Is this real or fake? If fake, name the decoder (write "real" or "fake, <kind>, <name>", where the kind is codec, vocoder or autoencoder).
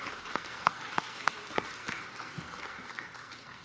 fake, codec, SNAC